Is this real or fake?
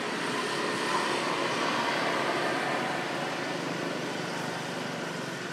real